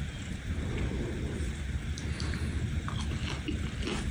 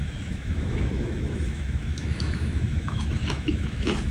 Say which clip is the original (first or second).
first